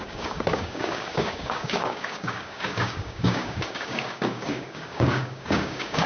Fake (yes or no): yes